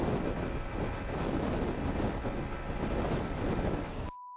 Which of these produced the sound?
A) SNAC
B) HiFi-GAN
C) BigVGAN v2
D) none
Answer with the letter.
D